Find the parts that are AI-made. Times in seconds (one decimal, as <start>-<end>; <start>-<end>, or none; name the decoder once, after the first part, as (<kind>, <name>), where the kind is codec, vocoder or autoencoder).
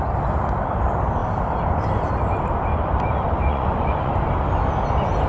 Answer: 3.5-4.1 (vocoder, Vocos)